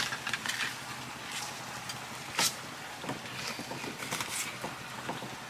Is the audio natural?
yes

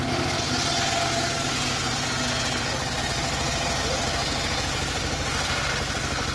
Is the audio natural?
yes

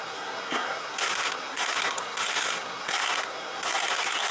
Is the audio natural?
no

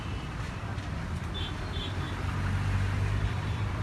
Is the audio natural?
no